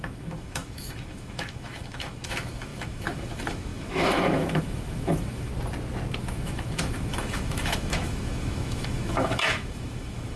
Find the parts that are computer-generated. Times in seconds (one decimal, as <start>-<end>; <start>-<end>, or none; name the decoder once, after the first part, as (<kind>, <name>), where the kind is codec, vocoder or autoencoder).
0.0-5.5 (autoencoder, DAC-VAE); 6.2-10.4